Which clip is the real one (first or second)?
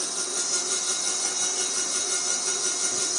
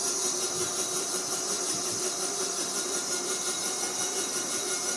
first